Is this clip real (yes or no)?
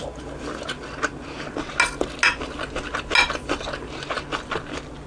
yes